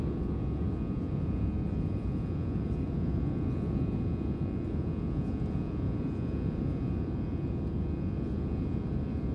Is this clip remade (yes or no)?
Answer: yes